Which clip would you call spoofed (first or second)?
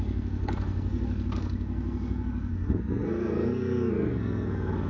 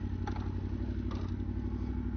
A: first